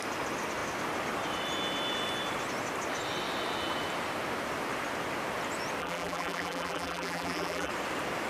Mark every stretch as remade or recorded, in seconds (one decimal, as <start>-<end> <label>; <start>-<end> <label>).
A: 0.0-5.8 recorded; 5.8-7.7 remade; 7.7-8.3 recorded